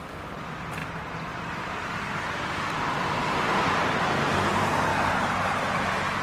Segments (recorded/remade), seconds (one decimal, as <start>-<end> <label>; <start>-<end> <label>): 0.0-0.8 recorded; 0.8-2.0 remade; 2.0-4.9 recorded; 4.9-5.6 remade; 5.6-6.2 recorded

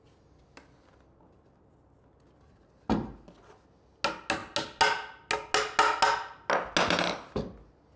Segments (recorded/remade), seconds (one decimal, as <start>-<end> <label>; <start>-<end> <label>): 0.0-8.0 recorded